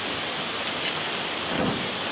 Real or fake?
real